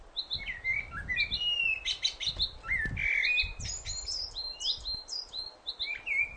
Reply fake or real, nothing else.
real